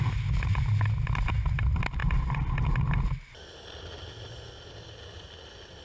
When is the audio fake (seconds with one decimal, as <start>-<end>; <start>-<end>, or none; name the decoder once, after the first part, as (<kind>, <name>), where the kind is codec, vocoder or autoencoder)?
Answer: none